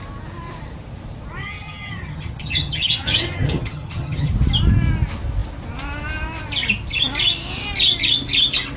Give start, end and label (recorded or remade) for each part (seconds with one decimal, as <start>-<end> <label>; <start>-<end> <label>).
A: 0.0-1.4 recorded; 1.4-4.3 remade; 4.3-8.8 recorded